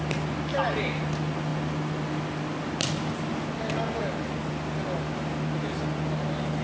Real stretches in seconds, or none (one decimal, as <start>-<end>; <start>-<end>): 0.0-6.6